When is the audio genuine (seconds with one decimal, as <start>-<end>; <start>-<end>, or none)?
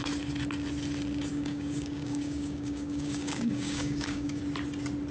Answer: 0.0-1.3; 4.4-5.1